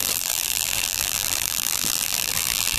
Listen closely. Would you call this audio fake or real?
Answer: fake